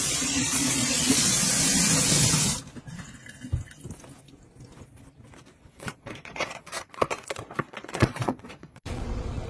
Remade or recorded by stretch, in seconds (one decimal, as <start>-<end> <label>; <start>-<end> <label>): 0.0-1.4 remade; 1.4-5.6 recorded; 5.6-9.5 remade